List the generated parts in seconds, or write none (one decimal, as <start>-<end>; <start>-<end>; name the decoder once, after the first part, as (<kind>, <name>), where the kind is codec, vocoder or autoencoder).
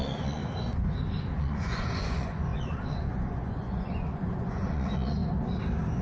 0.0-0.4 (vocoder, Vocos); 1.4-5.2